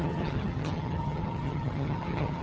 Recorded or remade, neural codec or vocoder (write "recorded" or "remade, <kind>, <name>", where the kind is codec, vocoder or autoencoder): remade, vocoder, HiFi-GAN